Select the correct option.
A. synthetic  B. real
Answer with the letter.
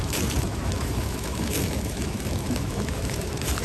A